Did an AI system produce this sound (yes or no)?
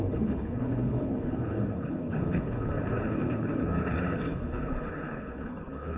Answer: yes